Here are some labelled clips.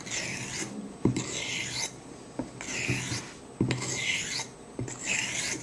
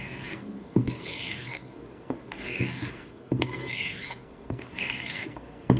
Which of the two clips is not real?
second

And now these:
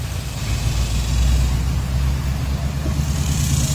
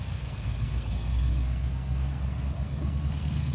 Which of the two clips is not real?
second